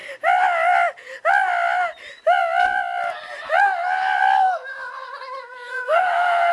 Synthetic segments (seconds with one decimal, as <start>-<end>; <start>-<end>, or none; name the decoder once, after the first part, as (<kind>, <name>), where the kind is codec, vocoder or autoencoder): 5.7-6.5 (codec, SNAC)